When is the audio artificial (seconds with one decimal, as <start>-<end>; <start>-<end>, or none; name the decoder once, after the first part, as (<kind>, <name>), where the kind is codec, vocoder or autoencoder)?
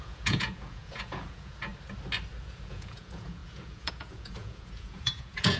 0.0-1.7 (vocoder, Vocos); 2.4-5.6